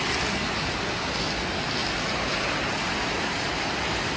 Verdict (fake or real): real